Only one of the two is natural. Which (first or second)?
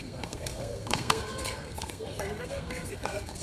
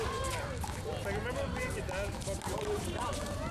second